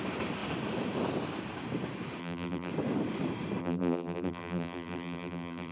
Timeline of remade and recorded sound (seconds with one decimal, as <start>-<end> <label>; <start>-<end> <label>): 0.0-2.2 recorded; 2.2-2.7 remade; 2.7-3.6 recorded; 3.6-5.7 remade